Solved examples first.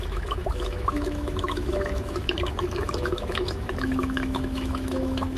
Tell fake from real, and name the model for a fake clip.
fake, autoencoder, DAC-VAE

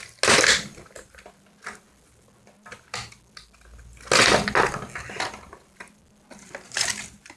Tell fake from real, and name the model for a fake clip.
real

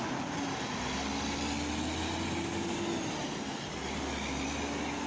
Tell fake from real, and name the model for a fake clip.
real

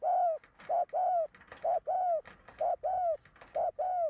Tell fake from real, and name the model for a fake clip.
real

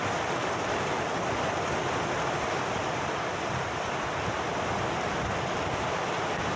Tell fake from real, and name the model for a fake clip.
real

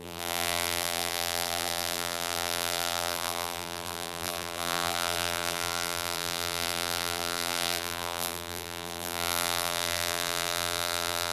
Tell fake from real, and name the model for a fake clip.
fake, vocoder, BigVGAN v2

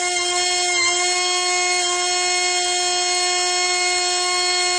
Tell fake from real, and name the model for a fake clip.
real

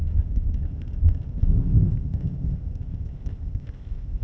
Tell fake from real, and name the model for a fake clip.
fake, codec, ZipCodec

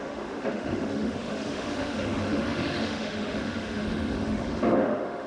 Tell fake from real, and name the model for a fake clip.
fake, autoencoder, DAC-VAE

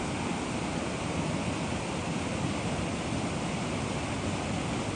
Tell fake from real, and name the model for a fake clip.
real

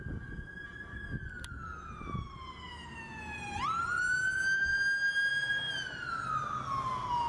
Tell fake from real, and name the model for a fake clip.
real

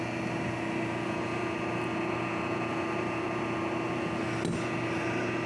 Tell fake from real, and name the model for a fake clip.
real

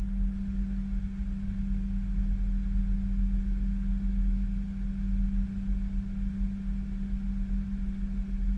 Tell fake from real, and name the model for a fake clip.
real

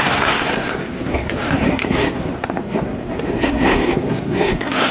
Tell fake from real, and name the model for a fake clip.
fake, codec, SNAC